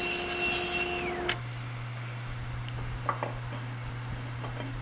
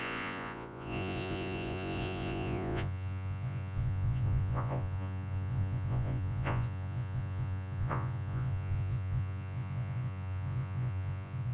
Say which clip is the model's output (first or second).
second